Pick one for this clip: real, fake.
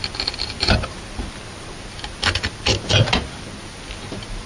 real